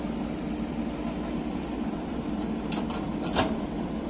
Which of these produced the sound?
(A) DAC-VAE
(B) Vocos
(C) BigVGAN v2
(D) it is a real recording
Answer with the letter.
C